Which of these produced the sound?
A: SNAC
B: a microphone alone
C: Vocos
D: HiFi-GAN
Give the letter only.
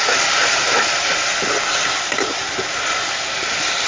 B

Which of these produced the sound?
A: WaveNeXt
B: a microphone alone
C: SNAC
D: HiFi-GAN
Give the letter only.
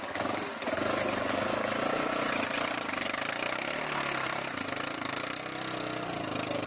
B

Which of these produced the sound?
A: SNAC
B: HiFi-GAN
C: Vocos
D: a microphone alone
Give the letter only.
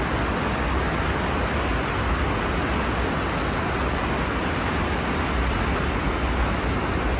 D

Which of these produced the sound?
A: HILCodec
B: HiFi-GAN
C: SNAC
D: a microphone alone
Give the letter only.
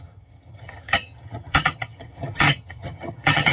B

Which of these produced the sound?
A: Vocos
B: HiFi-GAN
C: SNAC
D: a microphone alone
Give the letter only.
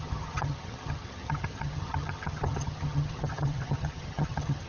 B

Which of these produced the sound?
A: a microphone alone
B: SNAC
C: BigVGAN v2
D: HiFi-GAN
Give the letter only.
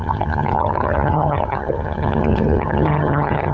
D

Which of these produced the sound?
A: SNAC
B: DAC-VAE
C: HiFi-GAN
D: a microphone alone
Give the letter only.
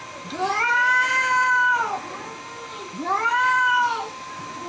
D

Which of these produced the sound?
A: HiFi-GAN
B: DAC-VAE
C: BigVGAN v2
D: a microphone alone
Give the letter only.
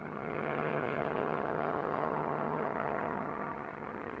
A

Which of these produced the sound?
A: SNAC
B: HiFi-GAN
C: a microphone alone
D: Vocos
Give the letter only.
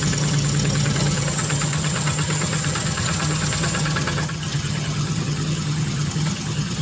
B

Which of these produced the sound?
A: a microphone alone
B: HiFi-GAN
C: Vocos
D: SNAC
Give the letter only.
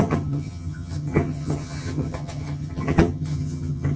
B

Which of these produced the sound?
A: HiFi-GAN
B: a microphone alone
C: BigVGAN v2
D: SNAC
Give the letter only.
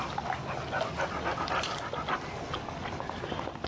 B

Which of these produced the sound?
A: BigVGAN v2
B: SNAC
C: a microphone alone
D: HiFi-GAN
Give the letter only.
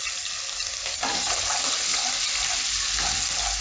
C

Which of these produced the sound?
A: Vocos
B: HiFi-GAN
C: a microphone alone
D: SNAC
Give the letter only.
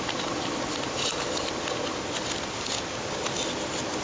C